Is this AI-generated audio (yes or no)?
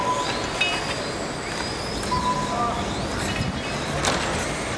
no